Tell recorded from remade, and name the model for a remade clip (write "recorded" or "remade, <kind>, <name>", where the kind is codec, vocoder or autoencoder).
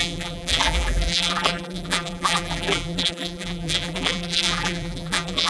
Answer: remade, vocoder, BigVGAN v2